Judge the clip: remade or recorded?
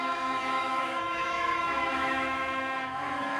remade